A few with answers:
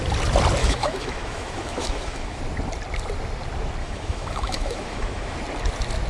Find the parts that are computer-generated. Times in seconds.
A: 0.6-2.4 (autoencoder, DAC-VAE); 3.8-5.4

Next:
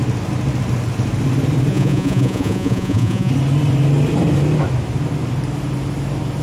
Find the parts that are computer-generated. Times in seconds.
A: 1.7-3.3 (vocoder, Vocos)